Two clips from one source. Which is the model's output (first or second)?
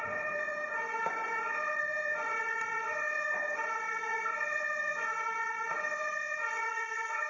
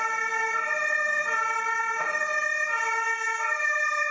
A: first